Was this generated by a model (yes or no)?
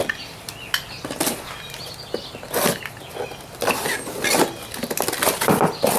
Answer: no